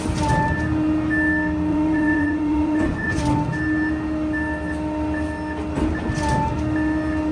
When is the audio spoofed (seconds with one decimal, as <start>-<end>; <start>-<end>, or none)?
1.7-3.2